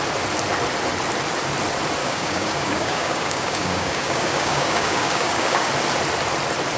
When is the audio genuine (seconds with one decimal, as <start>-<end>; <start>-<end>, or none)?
0.0-2.0; 5.7-6.8